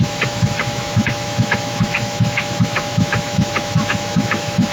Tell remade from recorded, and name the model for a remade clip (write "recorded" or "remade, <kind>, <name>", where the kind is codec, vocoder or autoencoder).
remade, autoencoder, DAC-VAE